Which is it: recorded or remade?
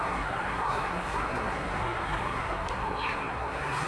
remade